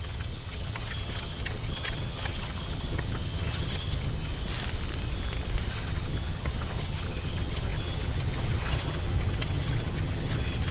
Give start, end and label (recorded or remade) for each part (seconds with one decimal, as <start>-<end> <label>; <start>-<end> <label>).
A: 0.0-4.3 remade; 4.3-5.7 recorded; 5.7-10.7 remade